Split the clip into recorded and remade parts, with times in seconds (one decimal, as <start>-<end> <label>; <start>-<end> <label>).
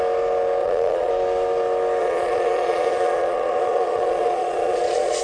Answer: 0.0-0.6 recorded; 0.6-1.1 remade; 1.1-2.0 recorded; 2.0-5.2 remade